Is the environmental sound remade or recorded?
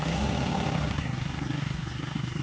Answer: remade